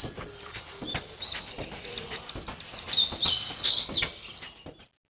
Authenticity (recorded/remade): recorded